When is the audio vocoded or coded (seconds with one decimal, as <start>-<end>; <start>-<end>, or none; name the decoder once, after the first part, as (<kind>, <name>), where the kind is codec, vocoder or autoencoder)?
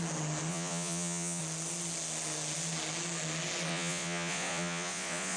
0.5-1.4 (vocoder, Vocos); 3.7-5.4